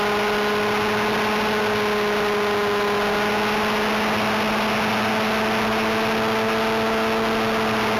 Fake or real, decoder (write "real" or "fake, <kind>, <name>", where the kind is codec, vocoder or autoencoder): real